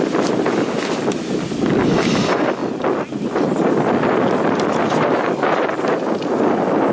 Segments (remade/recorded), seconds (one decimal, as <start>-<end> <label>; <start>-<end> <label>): 0.0-6.9 recorded